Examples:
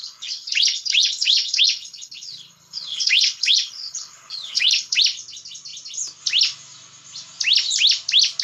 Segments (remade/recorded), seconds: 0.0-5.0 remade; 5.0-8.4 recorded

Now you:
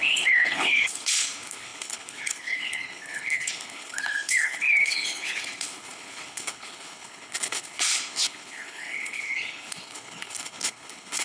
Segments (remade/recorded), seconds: 0.0-11.2 remade

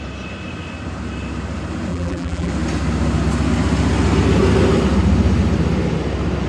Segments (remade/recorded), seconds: 0.0-1.9 recorded; 1.9-2.5 remade; 2.5-6.5 recorded

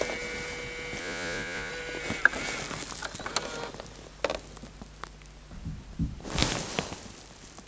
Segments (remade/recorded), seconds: 0.0-1.0 recorded; 1.0-1.7 remade; 1.7-7.7 recorded

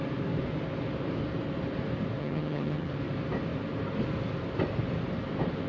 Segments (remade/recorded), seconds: 0.0-2.2 recorded; 2.2-2.9 remade; 2.9-5.7 recorded

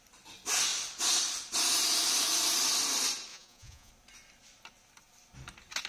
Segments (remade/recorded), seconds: 0.0-3.3 recorded; 3.3-3.9 remade; 3.9-5.9 recorded

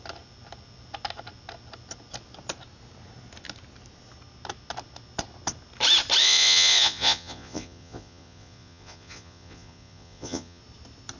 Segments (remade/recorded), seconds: 0.0-6.2 recorded; 6.2-10.6 remade; 10.6-11.2 recorded

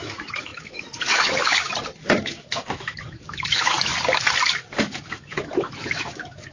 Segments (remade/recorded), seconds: 0.0-1.7 remade; 1.7-2.2 recorded; 2.2-3.9 remade; 3.9-4.7 recorded; 4.7-6.5 remade